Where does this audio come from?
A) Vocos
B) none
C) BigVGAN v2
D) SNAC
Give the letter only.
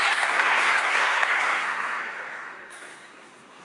D